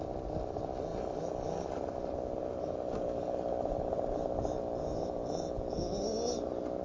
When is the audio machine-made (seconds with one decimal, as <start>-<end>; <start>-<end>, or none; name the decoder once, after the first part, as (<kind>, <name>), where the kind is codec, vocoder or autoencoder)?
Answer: none